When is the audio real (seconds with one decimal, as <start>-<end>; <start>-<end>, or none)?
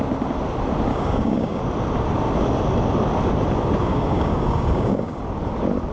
0.0-0.9; 1.6-3.8; 5.2-5.9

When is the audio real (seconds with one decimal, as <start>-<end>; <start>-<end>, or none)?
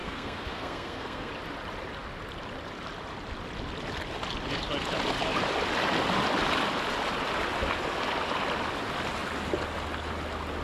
1.3-10.6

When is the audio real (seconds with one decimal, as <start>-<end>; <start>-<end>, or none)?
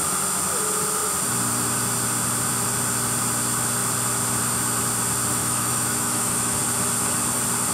0.0-5.4; 6.6-7.7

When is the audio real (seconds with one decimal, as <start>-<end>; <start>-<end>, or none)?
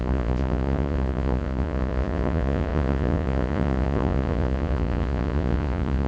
none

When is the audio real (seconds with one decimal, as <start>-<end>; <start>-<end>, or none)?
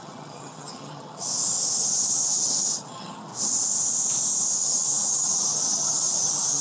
1.3-1.8; 3.3-4.6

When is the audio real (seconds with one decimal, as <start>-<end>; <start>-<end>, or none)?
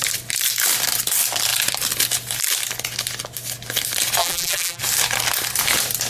0.0-4.2; 4.8-6.1